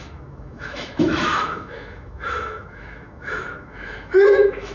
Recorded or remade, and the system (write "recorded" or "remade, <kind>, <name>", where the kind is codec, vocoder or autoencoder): remade, autoencoder, DAC-VAE